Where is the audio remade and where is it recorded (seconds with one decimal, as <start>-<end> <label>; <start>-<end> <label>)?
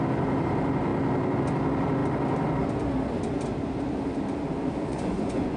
0.0-4.9 recorded; 4.9-5.6 remade